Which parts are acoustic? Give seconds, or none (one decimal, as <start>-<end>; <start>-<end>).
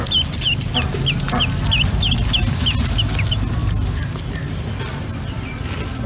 0.0-6.1